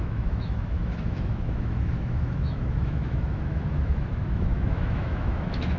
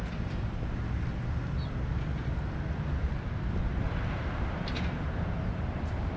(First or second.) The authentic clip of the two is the second